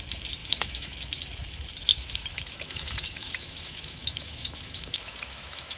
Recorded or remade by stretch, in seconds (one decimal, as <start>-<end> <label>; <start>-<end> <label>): 0.0-0.4 recorded; 0.4-1.2 remade; 1.2-1.9 recorded; 1.9-5.8 remade